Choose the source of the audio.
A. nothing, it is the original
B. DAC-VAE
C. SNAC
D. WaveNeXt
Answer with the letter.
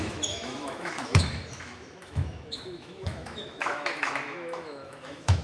B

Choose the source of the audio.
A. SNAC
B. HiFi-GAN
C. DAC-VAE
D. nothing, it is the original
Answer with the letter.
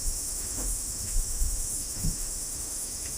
C